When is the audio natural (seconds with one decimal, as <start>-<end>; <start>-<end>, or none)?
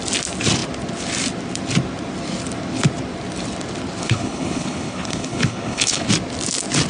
0.0-4.0; 6.1-6.9